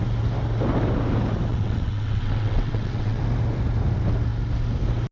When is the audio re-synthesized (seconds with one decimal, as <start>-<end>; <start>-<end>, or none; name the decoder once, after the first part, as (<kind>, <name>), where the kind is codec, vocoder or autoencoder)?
1.5-3.2 (vocoder, WaveNeXt)